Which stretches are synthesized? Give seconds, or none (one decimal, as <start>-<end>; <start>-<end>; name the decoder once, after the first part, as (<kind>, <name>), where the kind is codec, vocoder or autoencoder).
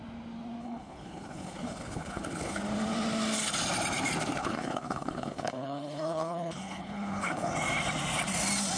0.6-2.6 (codec, HILCodec); 4.4-7.5